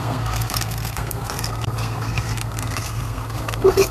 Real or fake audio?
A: fake